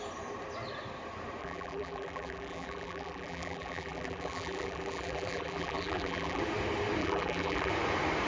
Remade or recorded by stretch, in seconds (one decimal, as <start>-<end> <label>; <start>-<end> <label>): 0.0-1.4 recorded; 1.4-6.4 remade; 6.4-7.0 recorded; 7.0-7.7 remade; 7.7-8.3 recorded